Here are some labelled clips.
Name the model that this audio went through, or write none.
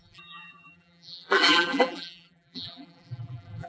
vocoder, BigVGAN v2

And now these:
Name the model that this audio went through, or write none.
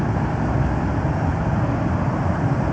none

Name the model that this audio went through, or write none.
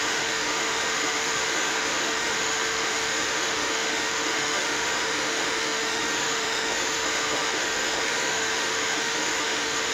autoencoder, DAC-VAE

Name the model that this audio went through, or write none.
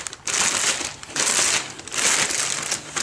none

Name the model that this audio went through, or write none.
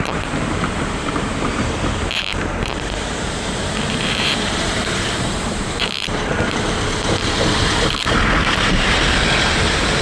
vocoder, BigVGAN v2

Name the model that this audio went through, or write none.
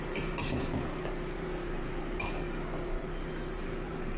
vocoder, BigVGAN v2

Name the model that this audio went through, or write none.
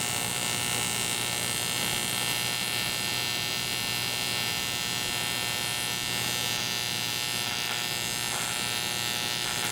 none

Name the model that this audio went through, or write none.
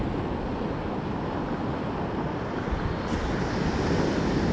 none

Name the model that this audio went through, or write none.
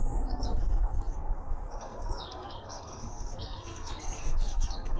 codec, SNAC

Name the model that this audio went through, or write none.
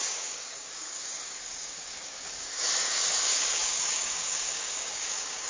codec, DAC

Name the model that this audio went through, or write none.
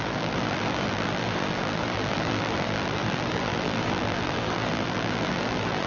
vocoder, BigVGAN v2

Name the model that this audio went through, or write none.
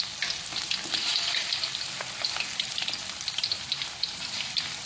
none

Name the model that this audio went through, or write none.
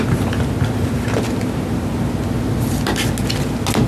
none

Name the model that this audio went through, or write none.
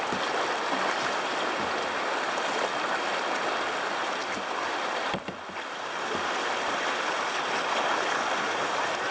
none